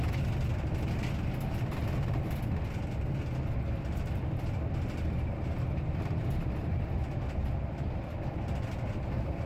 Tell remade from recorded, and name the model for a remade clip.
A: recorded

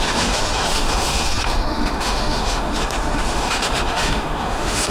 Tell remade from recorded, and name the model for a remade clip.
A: remade, autoencoder, DAC-VAE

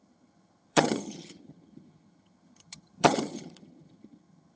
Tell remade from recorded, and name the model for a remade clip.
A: remade, vocoder, HiFi-GAN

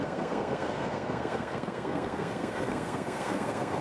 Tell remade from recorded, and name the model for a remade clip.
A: remade, codec, SNAC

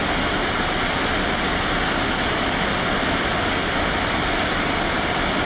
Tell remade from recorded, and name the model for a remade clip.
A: recorded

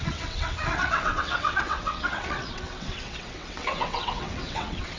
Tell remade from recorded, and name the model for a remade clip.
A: remade, vocoder, WaveNeXt